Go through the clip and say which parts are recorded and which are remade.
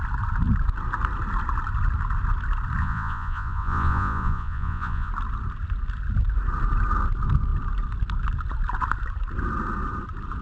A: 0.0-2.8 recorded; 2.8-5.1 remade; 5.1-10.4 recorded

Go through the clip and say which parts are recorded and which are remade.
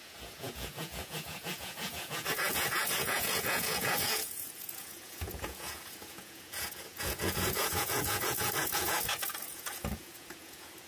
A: 0.0-10.9 remade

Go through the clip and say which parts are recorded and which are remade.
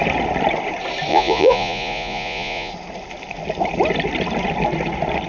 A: 0.0-1.1 recorded; 1.1-2.7 remade; 2.7-5.3 recorded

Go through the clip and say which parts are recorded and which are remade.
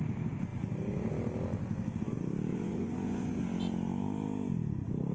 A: 0.0-2.5 recorded; 2.5-3.4 remade; 3.4-5.1 recorded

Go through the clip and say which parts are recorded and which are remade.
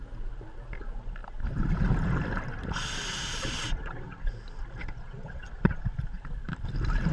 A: 0.0-3.3 recorded; 3.3-4.3 remade; 4.3-4.8 recorded; 4.8-6.0 remade; 6.0-7.1 recorded